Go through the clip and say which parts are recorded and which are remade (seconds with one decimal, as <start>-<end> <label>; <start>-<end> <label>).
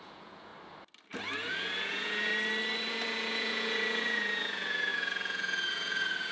0.0-0.5 remade; 0.5-1.5 recorded; 1.5-2.3 remade; 2.3-2.9 recorded; 2.9-6.3 remade